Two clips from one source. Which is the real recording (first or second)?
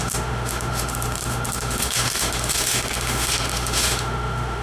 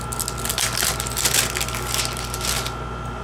second